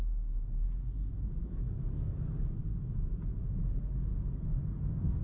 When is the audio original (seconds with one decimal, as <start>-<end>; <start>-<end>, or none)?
0.0-1.4; 2.3-5.2

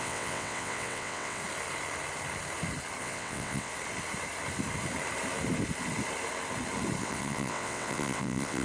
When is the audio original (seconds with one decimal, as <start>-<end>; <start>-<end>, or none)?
1.4-3.0; 3.7-7.0

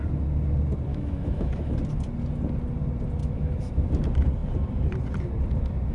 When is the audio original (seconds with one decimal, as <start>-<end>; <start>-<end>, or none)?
0.0-0.9; 1.7-3.2; 3.9-5.9

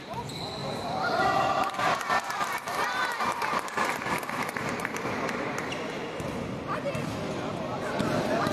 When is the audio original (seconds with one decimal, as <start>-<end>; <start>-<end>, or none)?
0.0-0.6; 5.7-7.7

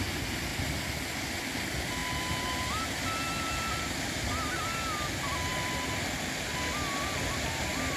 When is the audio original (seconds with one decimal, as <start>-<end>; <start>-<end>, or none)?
0.0-8.0